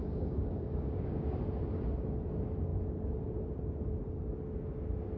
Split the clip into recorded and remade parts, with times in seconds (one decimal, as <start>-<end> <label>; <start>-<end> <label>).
0.0-1.4 remade; 1.4-5.2 recorded